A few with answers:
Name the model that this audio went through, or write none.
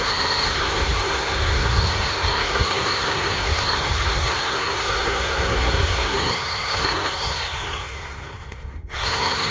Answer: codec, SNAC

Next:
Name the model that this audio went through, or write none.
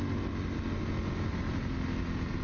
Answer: none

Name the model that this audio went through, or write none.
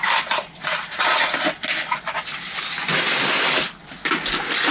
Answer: none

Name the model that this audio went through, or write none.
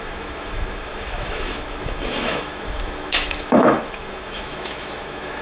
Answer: autoencoder, DAC-VAE